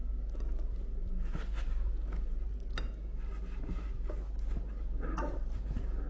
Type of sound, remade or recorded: recorded